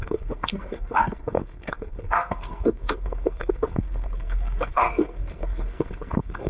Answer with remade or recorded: remade